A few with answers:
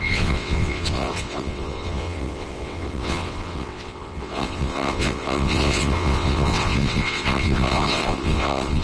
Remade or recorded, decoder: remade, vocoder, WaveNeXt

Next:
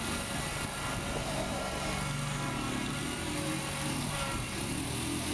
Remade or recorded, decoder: recorded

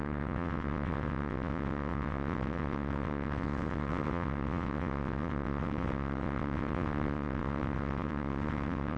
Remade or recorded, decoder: remade, vocoder, WaveNeXt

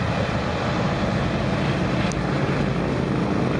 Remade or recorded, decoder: recorded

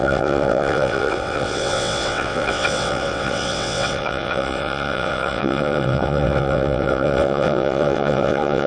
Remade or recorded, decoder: remade, vocoder, WaveNeXt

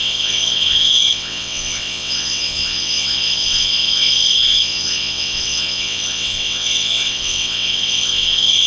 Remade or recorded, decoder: remade, vocoder, WaveNeXt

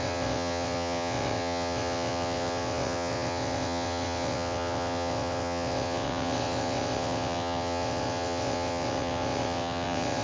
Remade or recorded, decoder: remade, vocoder, WaveNeXt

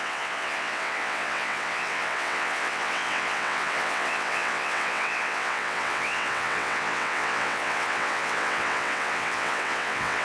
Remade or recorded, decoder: remade, vocoder, WaveNeXt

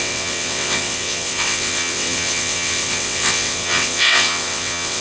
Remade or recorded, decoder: remade, vocoder, WaveNeXt